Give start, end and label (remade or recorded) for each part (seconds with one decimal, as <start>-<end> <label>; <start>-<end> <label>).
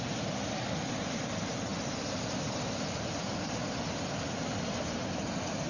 0.0-5.7 recorded